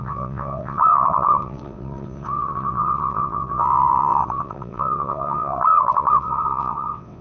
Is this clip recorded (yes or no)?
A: no